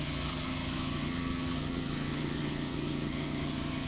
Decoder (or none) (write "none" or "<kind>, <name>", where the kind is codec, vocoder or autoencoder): vocoder, HiFi-GAN